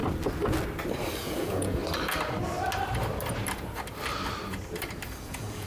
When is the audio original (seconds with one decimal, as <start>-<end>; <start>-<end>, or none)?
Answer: 0.0-1.2; 1.8-5.2